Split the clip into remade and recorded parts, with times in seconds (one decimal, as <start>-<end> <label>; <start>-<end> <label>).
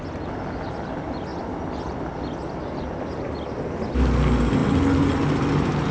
0.0-5.9 recorded